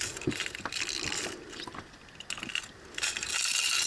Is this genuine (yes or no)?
yes